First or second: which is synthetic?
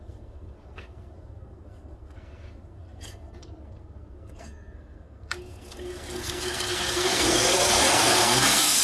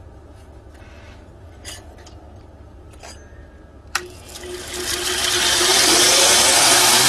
first